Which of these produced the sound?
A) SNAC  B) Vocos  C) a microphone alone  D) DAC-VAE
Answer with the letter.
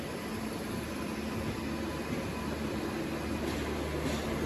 C